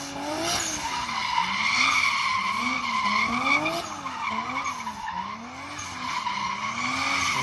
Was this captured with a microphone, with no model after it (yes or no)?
yes